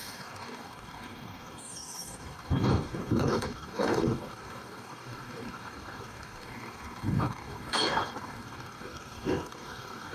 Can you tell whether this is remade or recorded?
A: remade